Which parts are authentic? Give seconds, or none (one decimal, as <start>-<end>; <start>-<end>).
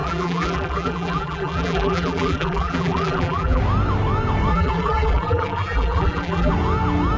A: 3.6-4.5; 6.5-7.2